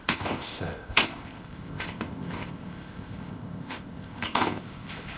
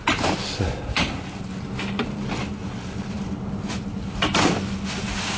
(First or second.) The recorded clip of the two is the second